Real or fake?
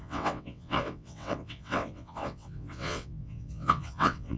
fake